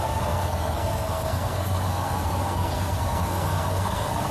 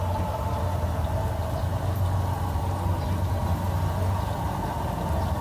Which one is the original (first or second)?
second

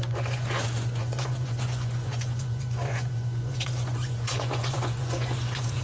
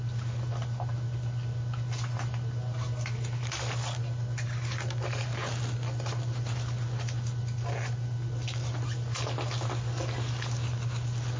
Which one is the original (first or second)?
second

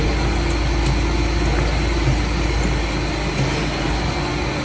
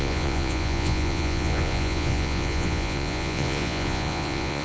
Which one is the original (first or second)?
first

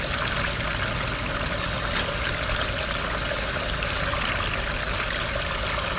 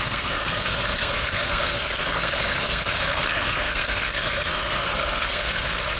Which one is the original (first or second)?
first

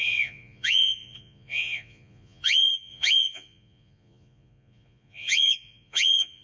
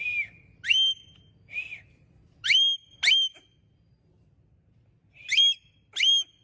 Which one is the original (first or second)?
second